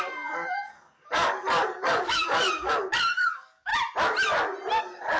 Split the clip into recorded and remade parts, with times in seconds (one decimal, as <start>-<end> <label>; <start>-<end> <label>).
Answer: 0.0-3.7 remade; 3.7-4.8 recorded; 4.8-5.2 remade